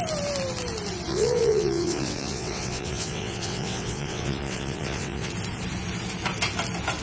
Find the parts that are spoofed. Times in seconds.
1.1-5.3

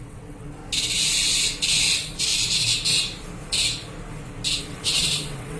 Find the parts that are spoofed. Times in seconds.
0.0-0.6; 1.9-2.3; 4.6-5.6

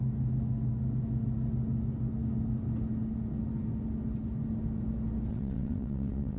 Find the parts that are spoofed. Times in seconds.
5.3-6.4

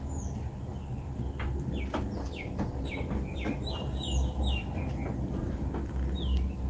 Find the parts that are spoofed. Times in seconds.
none

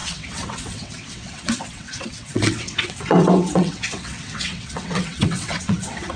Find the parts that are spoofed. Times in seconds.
0.0-6.2

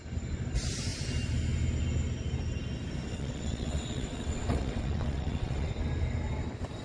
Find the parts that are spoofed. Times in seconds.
3.1-5.7

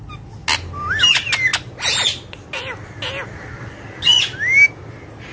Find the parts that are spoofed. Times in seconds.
none